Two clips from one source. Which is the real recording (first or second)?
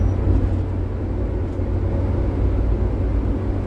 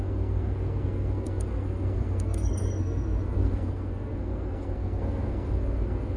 first